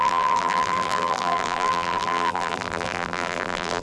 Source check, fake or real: fake